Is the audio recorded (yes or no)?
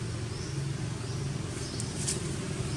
yes